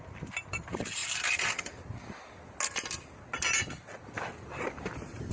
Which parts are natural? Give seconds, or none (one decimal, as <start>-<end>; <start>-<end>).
1.0-4.2